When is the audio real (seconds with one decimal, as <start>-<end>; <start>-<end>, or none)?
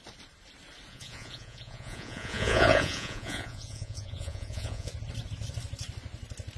0.0-0.9; 4.9-6.6